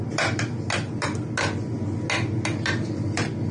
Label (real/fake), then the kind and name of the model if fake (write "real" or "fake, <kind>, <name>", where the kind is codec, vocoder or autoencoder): real